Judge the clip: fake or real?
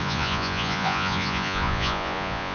fake